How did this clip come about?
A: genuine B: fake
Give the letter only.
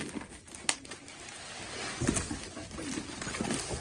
A